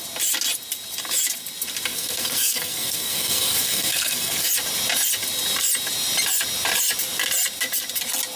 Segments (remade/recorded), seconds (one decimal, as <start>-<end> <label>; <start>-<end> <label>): 0.0-1.9 recorded; 1.9-4.5 remade; 4.5-8.4 recorded